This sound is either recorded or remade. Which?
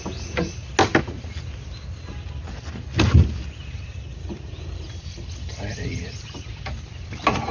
recorded